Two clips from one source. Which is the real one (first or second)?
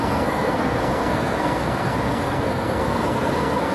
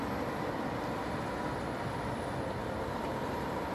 second